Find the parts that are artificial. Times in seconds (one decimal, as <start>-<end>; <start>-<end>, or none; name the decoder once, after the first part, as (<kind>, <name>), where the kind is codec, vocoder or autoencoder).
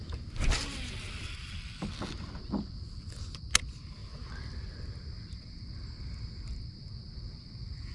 none